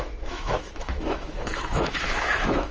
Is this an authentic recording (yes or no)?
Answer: no